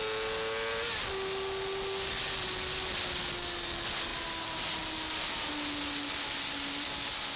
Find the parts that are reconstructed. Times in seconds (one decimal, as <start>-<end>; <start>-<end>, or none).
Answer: none